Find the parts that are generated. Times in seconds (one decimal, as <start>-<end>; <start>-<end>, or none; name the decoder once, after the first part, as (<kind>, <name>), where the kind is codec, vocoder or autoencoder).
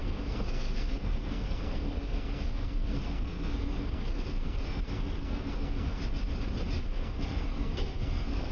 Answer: 0.0-6.0 (codec, SNAC); 6.8-8.5